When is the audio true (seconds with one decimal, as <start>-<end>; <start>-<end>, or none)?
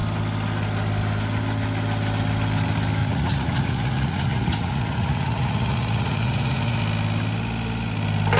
0.0-3.0; 6.8-8.4